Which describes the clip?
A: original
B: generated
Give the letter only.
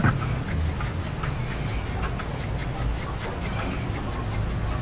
A